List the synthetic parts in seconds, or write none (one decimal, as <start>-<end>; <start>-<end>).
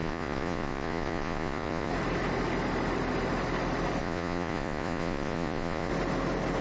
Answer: 0.0-1.9; 4.0-5.9